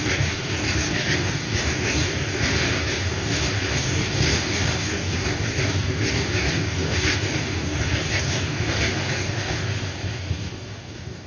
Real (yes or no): no